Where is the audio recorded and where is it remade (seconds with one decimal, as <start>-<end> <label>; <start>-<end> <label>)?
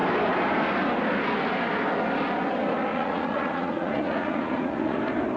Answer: 0.0-2.9 recorded; 2.9-5.0 remade; 5.0-5.4 recorded